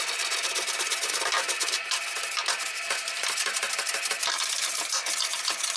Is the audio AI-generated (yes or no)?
no